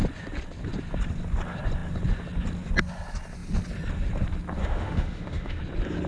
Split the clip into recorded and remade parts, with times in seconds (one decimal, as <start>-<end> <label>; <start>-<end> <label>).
0.0-4.6 recorded; 4.6-5.6 remade; 5.6-6.1 recorded